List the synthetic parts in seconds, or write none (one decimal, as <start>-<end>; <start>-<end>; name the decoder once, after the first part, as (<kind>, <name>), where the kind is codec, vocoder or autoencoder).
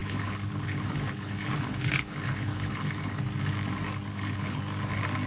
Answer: 0.0-3.2 (codec, HILCodec); 4.1-4.6